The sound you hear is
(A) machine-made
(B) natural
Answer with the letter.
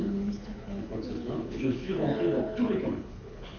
A